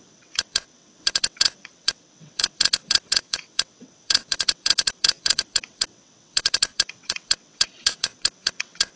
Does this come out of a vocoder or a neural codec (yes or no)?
yes